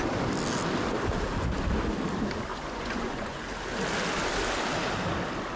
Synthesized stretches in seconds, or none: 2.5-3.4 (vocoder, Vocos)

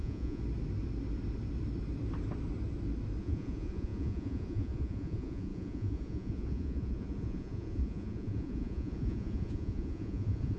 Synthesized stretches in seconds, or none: 0.0-0.4 (vocoder, Vocos); 3.2-10.6

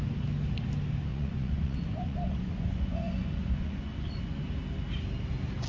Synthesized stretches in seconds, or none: 1.1-4.4 (vocoder, Vocos)

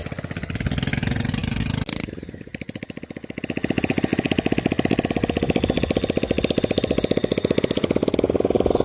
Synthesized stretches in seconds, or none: none

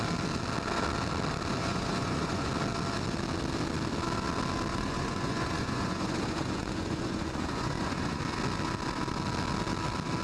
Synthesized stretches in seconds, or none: 1.6-2.5 (vocoder, Vocos); 4.7-8.2

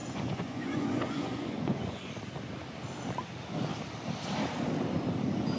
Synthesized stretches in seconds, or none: 0.0-2.1 (vocoder, Vocos)

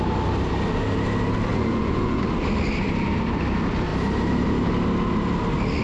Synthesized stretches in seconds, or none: 1.5-2.2 (vocoder, Vocos)

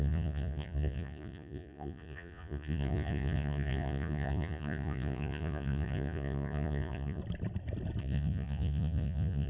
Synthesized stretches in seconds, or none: 0.0-7.2 (vocoder, Vocos); 8.0-9.5